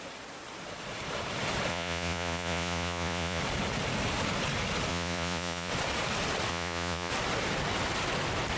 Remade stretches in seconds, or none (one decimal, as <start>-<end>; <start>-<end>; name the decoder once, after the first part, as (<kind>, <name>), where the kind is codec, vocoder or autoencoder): 1.7-3.4 (vocoder, Vocos); 4.9-5.7; 6.5-7.1